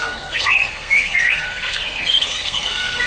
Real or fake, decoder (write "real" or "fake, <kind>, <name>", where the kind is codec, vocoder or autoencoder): fake, codec, SNAC